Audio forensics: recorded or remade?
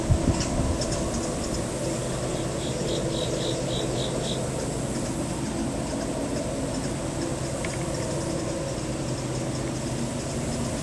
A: recorded